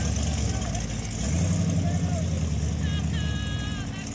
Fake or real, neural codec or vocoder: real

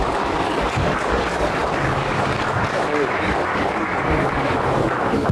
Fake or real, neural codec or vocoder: fake, codec, DAC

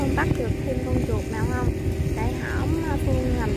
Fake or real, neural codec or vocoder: real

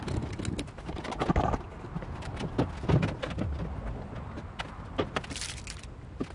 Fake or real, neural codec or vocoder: real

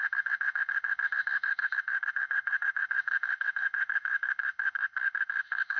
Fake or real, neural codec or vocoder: fake, autoencoder, DAC-VAE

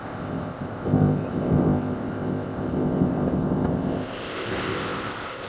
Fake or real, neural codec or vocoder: fake, codec, ZipCodec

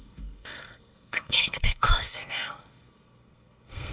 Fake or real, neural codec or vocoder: fake, codec, SNAC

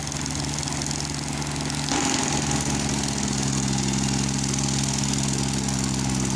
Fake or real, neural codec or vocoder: real